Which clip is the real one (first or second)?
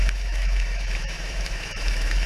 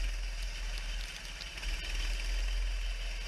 second